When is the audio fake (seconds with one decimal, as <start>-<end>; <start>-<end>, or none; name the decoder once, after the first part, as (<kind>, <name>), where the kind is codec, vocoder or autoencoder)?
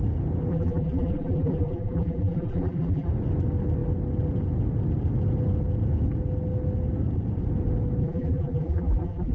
0.5-3.1 (vocoder, BigVGAN v2); 8.0-9.3